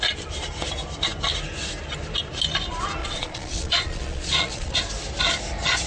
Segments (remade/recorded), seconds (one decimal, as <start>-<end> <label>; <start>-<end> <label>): 0.0-3.0 recorded; 3.0-4.8 remade; 4.8-5.9 recorded